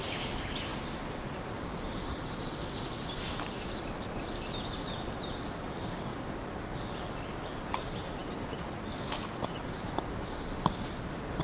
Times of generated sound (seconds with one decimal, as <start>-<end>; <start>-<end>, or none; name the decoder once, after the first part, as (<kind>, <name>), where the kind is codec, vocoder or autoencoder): none